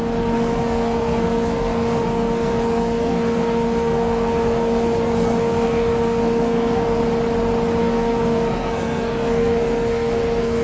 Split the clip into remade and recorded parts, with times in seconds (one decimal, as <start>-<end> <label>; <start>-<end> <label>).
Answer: 0.0-7.0 remade; 7.0-7.8 recorded; 7.8-10.6 remade